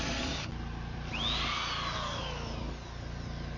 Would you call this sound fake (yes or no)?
no